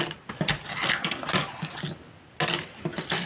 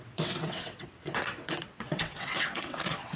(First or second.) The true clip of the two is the first